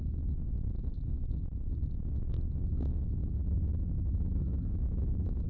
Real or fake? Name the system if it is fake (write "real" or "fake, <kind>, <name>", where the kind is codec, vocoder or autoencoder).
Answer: fake, codec, DAC